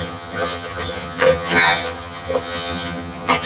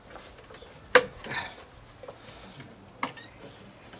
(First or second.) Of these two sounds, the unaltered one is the second